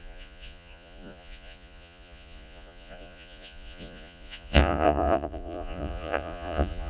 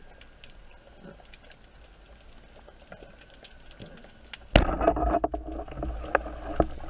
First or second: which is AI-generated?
first